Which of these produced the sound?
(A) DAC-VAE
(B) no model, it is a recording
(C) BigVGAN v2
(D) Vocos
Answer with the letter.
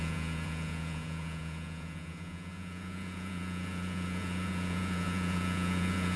D